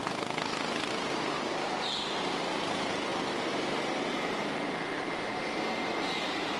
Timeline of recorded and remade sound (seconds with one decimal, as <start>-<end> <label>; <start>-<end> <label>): 0.0-0.9 remade; 0.9-6.6 recorded